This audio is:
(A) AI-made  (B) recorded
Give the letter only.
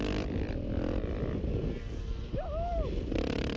B